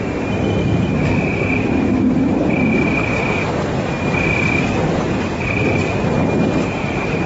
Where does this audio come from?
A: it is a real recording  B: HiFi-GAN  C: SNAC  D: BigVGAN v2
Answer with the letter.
D